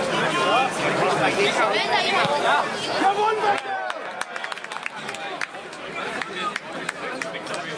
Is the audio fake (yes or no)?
no